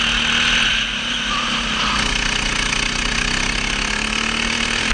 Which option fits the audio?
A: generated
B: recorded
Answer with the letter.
B